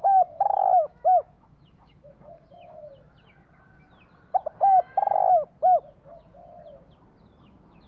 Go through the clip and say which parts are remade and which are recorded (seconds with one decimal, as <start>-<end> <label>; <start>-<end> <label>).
0.0-2.9 remade; 2.9-7.4 recorded; 7.4-7.9 remade